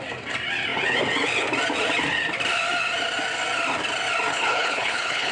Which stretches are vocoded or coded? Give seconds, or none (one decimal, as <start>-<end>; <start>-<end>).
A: 4.3-5.3